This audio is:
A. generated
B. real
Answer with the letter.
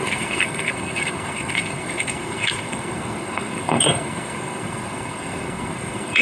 A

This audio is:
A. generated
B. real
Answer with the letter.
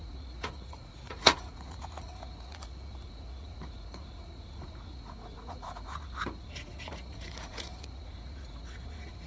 A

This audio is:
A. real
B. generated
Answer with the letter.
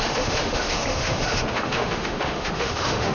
B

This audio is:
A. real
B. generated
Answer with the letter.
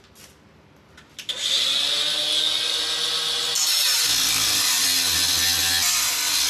A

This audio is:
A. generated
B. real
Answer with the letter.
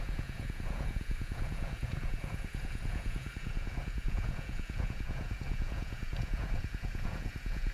A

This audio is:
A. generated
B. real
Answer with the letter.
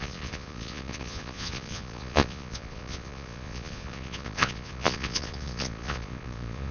A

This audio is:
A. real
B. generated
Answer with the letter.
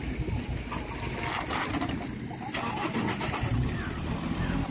A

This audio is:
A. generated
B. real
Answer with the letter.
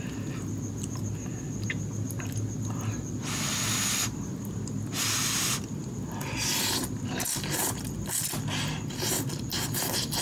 B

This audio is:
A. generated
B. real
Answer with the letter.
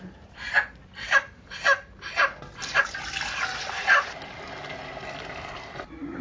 A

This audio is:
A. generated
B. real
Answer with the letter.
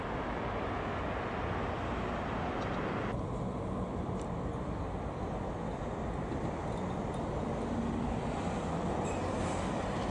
B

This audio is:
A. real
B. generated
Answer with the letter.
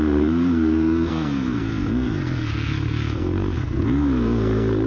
B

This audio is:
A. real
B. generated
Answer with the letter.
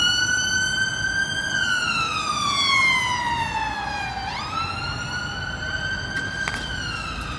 A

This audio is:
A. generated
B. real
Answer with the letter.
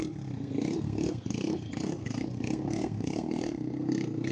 A